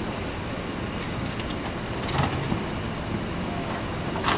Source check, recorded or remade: recorded